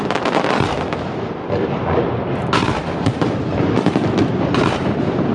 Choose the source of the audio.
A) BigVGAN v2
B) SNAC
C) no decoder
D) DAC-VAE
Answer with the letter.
A